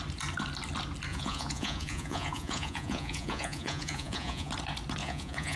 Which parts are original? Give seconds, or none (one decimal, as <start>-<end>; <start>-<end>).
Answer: 0.0-1.1; 4.5-5.0